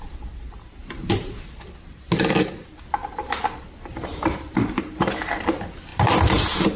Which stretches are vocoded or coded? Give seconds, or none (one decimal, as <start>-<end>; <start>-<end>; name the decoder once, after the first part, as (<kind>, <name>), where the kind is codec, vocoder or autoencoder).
0.8-2.0 (vocoder, BigVGAN v2); 3.0-5.4